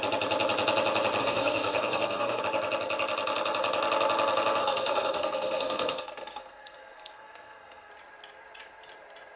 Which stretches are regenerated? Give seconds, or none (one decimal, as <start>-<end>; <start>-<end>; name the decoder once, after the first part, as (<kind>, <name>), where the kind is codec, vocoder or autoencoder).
1.2-2.4 (codec, SNAC); 4.6-7.9